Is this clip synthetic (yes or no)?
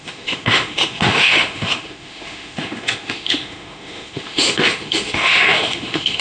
yes